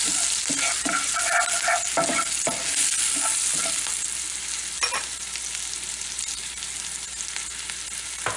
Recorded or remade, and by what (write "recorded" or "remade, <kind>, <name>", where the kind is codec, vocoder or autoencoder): recorded